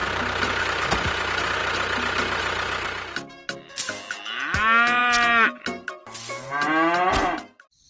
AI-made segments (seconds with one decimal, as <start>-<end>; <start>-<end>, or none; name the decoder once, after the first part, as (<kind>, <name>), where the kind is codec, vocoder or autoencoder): none